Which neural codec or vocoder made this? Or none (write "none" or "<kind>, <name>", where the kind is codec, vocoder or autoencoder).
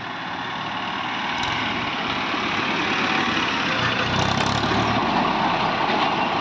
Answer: none